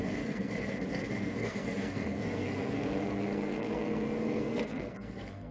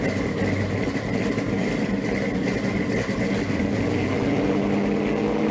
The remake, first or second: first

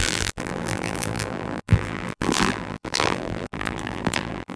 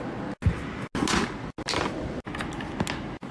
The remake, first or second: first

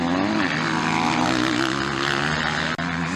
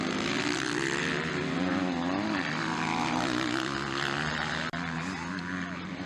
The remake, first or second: second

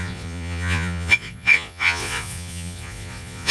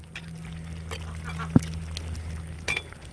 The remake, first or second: first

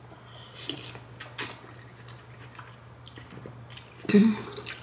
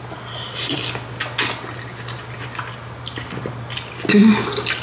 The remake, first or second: first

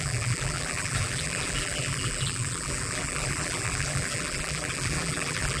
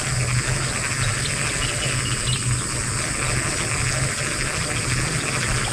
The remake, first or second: first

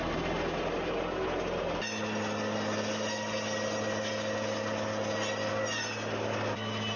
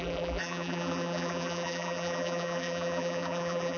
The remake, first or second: second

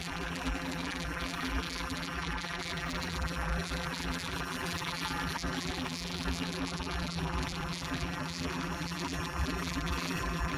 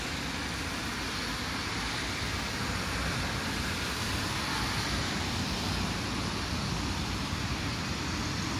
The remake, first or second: first